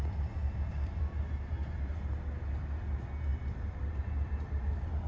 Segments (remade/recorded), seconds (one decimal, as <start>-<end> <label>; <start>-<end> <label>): 0.0-0.4 recorded; 0.4-1.1 remade; 1.1-3.3 recorded; 3.3-5.1 remade